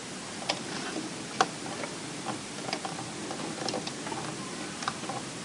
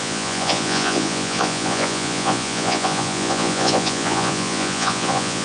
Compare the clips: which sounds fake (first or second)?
second